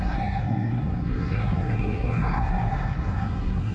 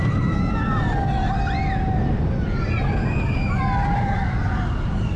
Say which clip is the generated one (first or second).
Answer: first